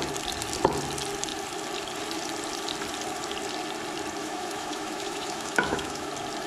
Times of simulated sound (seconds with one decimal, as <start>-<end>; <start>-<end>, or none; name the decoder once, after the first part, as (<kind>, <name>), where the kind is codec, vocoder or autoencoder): 4.2-6.1 (autoencoder, DAC-VAE)